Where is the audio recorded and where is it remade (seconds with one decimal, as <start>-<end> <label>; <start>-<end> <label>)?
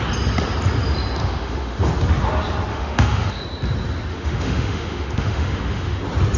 0.0-1.2 recorded; 1.2-1.9 remade; 1.9-2.7 recorded; 2.7-3.4 remade; 3.4-4.1 recorded; 4.1-6.0 remade; 6.0-6.4 recorded